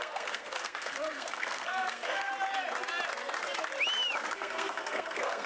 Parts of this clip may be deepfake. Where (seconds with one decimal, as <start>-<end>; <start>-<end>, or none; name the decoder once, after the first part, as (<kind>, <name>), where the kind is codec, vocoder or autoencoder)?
0.0-2.3 (codec, SNAC); 4.3-5.5